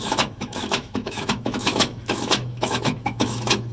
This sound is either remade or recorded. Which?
remade